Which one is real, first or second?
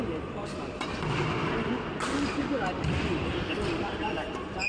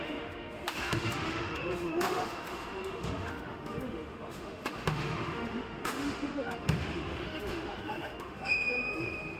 first